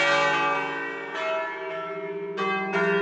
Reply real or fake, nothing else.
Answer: real